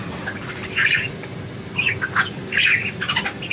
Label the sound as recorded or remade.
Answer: recorded